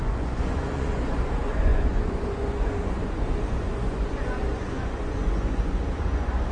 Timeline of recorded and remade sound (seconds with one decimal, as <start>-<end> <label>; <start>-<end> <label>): 0.0-6.5 remade